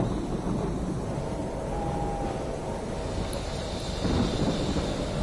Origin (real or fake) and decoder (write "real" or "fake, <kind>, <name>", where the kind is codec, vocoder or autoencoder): real